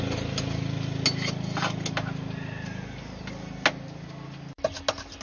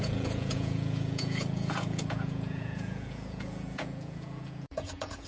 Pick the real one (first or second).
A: first